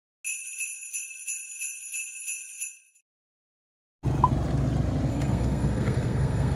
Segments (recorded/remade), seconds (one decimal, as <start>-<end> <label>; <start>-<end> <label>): 0.0-5.1 recorded; 5.1-6.6 remade